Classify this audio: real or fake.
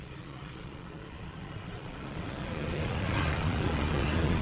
fake